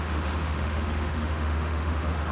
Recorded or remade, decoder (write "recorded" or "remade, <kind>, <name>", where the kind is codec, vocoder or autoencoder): remade, autoencoder, DAC-VAE